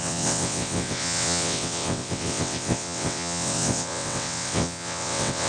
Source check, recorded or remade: remade